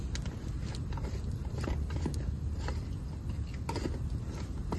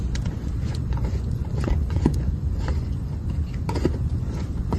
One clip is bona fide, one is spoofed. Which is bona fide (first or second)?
first